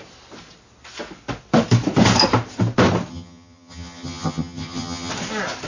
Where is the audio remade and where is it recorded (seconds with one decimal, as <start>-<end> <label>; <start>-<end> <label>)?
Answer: 0.0-3.1 recorded; 3.1-5.1 remade; 5.1-5.7 recorded